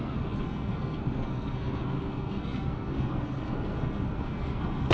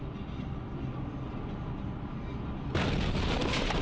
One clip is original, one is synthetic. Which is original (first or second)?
second